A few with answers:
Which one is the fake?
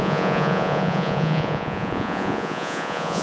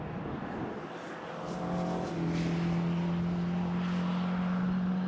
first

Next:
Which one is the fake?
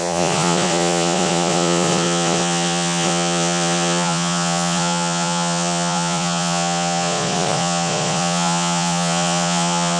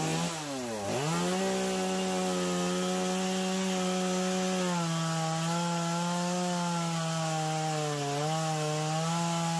first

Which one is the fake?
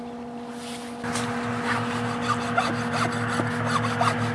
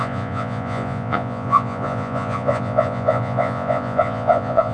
second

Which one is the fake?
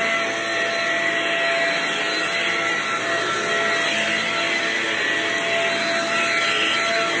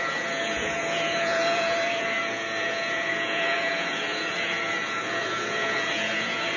second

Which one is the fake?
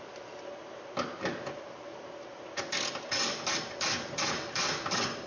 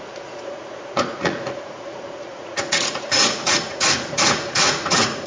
second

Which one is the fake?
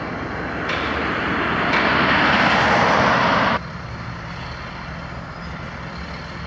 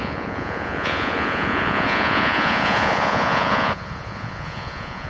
second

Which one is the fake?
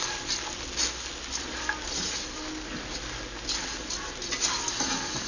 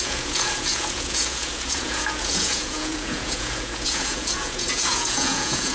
second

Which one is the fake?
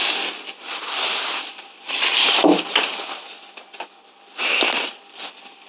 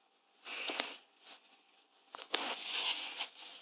second